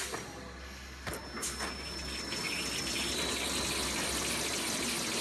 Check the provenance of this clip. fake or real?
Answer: real